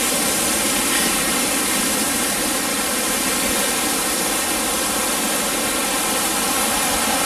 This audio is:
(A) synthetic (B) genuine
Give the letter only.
B